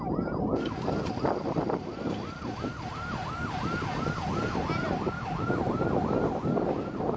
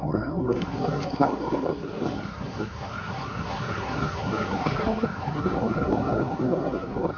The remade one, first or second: second